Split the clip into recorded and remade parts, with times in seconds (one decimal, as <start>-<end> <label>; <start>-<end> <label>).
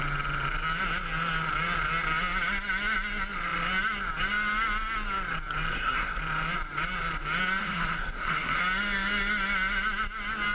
0.0-5.7 recorded; 5.7-6.2 remade; 6.2-7.6 recorded; 7.6-8.6 remade; 8.6-10.5 recorded